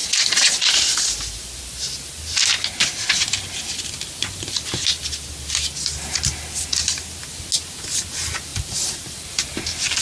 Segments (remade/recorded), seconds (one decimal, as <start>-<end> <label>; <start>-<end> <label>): 0.0-2.1 remade; 2.1-8.5 recorded; 8.5-9.6 remade; 9.6-10.0 recorded